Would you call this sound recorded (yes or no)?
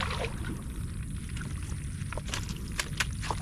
yes